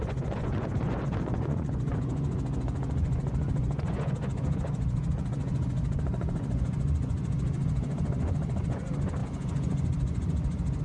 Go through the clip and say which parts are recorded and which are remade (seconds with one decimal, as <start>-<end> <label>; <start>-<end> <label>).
0.0-10.8 remade